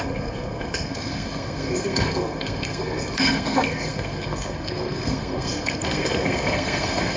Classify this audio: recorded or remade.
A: remade